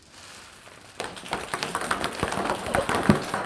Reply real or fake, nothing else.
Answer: real